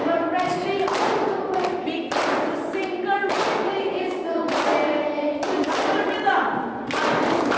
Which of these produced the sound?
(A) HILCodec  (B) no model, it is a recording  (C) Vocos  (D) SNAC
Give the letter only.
B